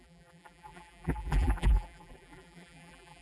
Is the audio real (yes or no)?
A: no